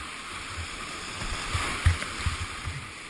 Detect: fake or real real